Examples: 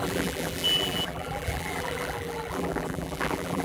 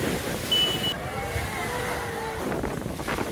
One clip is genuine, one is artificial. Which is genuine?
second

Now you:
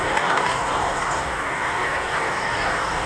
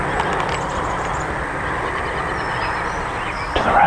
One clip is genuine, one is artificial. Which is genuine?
second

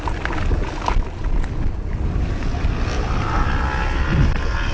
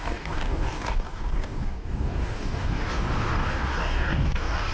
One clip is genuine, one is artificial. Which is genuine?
first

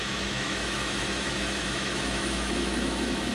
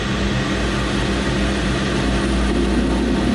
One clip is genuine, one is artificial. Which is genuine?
second